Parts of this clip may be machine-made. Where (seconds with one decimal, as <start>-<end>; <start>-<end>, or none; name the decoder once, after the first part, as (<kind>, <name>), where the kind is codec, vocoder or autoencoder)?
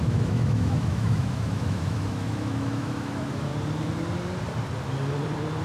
0.0-3.5 (autoencoder, DAC-VAE)